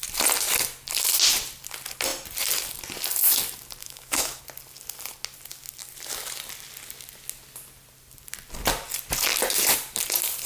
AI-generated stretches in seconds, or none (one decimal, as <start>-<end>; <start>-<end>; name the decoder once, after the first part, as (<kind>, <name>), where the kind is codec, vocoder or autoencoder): 3.8-4.4 (autoencoder, DAC-VAE)